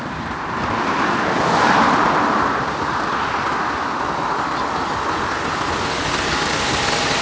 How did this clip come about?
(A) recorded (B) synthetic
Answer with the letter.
A